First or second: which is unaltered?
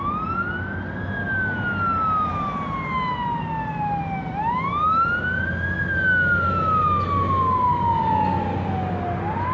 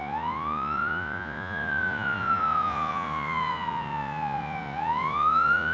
first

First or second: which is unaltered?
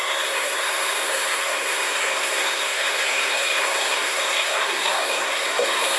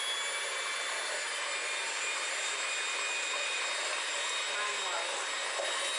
second